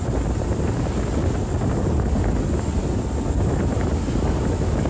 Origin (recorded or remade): recorded